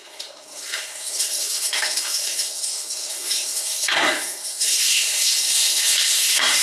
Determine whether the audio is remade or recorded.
remade